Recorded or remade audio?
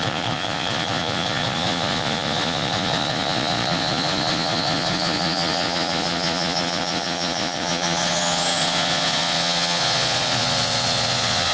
remade